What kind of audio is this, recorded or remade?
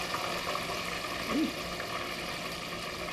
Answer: recorded